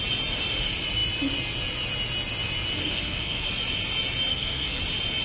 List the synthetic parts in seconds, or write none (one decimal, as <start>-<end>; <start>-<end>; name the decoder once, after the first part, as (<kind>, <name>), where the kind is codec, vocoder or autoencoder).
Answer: 2.8-3.5 (codec, SNAC); 4.3-4.8